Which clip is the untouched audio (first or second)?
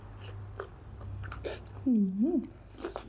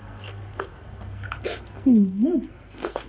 first